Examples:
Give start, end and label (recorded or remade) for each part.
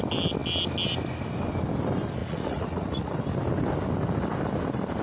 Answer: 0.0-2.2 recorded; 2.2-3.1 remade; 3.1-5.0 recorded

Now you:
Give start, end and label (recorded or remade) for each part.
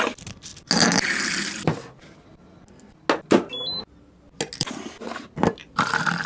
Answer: 0.0-6.3 recorded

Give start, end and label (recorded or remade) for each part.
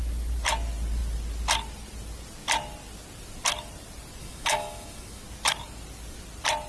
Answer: 0.0-4.2 recorded; 4.2-5.2 remade; 5.2-6.7 recorded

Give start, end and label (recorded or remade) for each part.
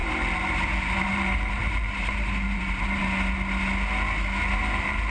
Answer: 0.0-3.0 remade; 3.0-4.5 recorded; 4.5-5.1 remade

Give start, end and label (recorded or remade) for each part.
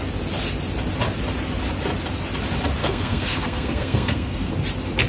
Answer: 0.0-2.8 recorded; 2.8-4.5 remade; 4.5-5.1 recorded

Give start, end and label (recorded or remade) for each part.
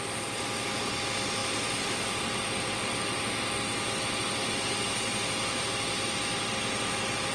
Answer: 0.0-7.3 recorded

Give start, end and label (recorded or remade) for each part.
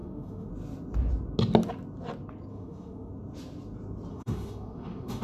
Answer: 0.0-0.5 remade; 0.5-2.5 recorded; 2.5-3.1 remade; 3.1-4.1 recorded; 4.1-5.2 remade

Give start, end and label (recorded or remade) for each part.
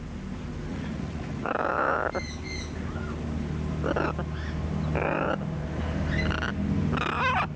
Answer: 0.0-0.7 recorded; 0.7-1.5 remade; 1.5-7.6 recorded